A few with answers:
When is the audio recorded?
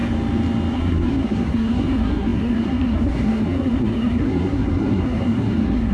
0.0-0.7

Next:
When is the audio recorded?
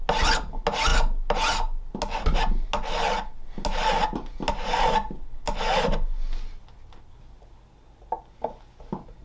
0.0-9.2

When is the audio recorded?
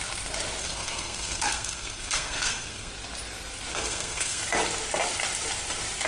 0.0-0.6; 2.9-3.7; 4.4-6.1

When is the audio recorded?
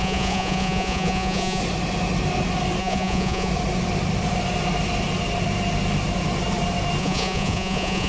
1.6-2.8; 3.5-7.0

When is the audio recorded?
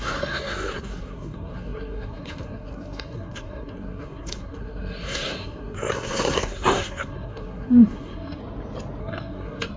8.4-9.0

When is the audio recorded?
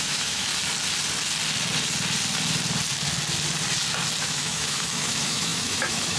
0.5-4.2